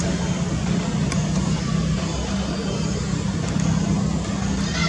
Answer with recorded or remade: recorded